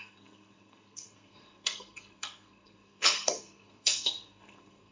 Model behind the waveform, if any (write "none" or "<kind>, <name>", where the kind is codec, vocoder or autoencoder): codec, SNAC